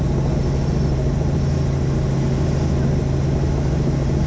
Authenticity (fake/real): real